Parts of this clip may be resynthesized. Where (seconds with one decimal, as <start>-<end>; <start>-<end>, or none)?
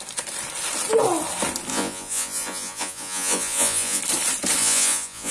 1.7-4.0; 4.6-5.3